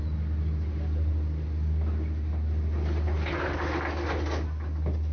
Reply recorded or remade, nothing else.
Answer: recorded